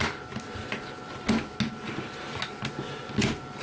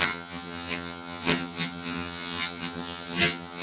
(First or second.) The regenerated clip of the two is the second